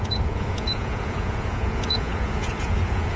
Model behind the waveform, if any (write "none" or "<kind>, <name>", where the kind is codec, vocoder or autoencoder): vocoder, Vocos